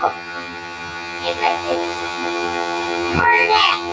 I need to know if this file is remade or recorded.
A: remade